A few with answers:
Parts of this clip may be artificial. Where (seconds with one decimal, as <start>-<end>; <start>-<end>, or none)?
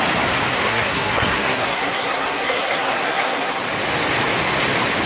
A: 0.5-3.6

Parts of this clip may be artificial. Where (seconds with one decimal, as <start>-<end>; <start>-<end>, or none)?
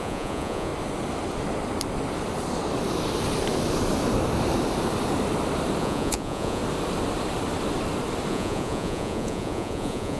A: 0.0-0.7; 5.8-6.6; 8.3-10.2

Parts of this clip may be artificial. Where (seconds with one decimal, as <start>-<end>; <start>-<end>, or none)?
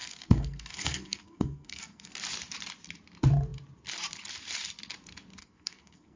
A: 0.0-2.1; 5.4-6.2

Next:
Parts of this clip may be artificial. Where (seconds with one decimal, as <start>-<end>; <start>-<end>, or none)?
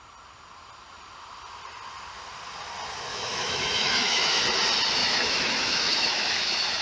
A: 3.1-4.4; 5.0-6.8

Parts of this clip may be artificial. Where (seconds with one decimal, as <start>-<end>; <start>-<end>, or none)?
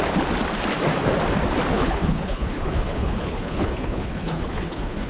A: 1.7-5.1